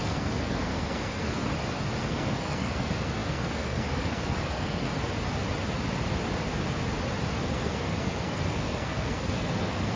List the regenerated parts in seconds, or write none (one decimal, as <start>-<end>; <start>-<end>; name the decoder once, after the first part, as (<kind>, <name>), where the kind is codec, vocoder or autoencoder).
0.0-1.5 (codec, SNAC); 2.0-4.9; 7.4-10.0